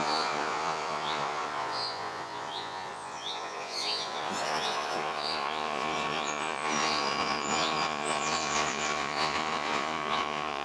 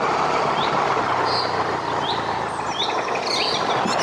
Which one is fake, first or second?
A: first